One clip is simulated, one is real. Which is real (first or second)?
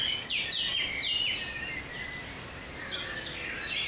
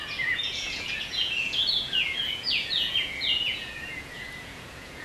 first